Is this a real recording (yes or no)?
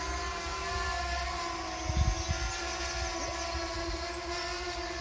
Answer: yes